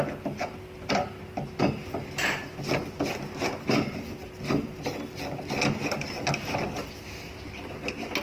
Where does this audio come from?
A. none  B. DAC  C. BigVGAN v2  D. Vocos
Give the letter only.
A